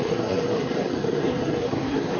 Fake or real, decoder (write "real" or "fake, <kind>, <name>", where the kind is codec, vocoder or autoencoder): fake, codec, SNAC